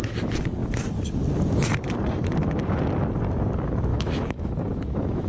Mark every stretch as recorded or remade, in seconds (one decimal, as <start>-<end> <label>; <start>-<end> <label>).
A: 0.0-3.9 recorded; 3.9-5.3 remade